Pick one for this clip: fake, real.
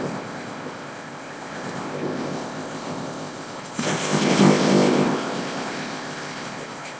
fake